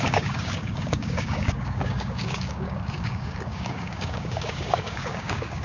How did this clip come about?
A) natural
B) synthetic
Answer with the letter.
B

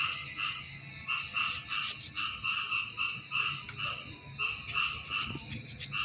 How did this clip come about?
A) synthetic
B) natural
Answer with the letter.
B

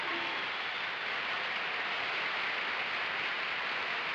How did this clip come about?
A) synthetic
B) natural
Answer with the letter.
B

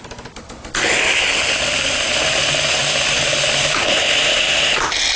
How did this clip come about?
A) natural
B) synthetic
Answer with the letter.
A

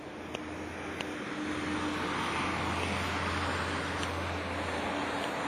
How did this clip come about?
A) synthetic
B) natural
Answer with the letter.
B